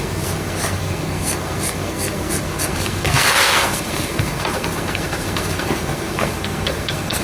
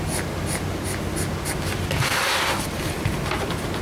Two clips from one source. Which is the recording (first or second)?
second